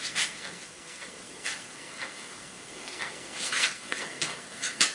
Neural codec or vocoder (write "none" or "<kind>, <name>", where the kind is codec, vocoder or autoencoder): codec, SNAC